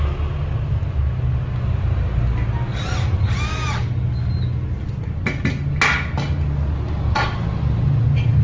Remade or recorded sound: recorded